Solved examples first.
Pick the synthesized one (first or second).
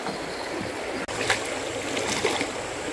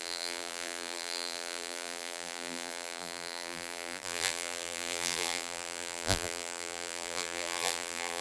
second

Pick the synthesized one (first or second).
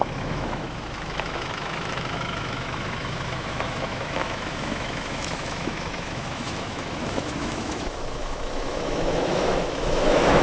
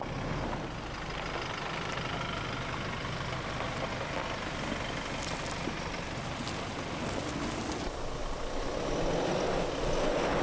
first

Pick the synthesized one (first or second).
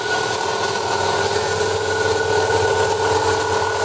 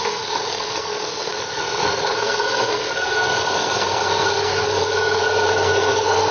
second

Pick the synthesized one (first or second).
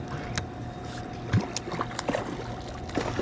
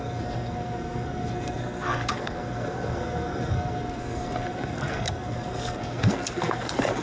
second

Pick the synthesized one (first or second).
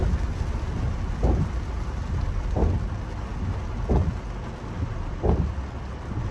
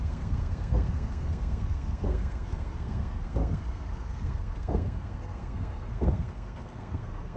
second